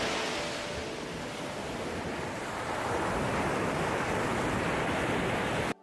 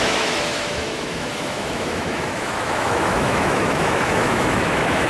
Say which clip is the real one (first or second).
first